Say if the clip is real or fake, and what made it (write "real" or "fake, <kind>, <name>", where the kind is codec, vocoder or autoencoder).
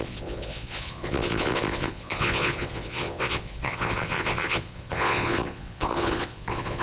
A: fake, vocoder, Vocos